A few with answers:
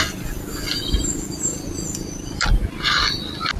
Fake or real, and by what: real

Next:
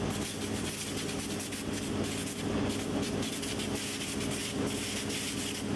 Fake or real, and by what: real